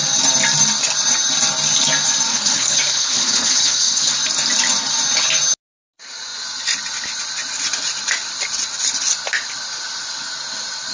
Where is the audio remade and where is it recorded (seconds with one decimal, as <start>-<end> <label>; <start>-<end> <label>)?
0.0-2.3 recorded; 2.3-4.1 remade; 4.1-10.9 recorded